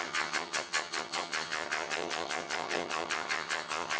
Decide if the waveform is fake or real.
fake